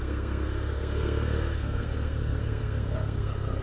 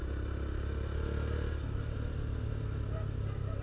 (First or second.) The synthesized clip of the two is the first